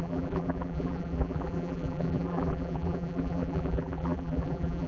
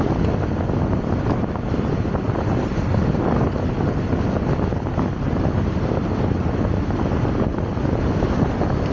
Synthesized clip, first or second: first